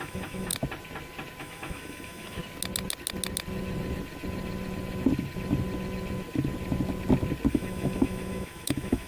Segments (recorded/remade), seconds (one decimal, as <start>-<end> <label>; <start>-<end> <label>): 0.0-0.5 remade; 0.5-1.4 recorded; 1.4-2.4 remade; 2.4-7.5 recorded; 7.5-9.1 remade